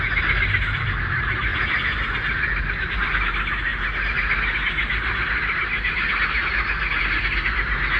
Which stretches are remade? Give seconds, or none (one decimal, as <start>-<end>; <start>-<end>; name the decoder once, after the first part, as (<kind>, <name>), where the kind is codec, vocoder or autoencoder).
none